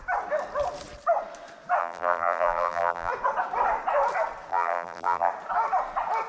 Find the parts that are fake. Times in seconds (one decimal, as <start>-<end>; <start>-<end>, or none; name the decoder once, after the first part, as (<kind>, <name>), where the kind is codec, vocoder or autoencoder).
1.8-3.1 (vocoder, BigVGAN v2); 4.5-5.3